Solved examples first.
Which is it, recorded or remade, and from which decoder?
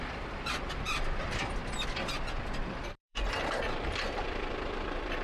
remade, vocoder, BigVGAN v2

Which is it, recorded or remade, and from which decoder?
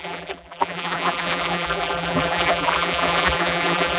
remade, vocoder, BigVGAN v2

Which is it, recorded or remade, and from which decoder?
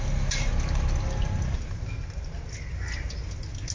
recorded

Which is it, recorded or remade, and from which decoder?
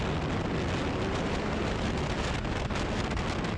recorded